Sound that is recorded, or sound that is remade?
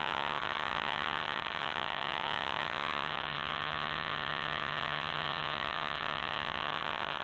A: remade